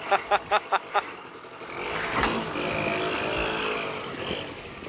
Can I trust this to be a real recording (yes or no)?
yes